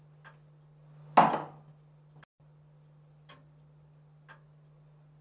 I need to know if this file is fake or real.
real